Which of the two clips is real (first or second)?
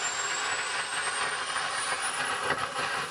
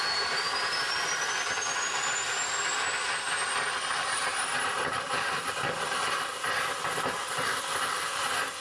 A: first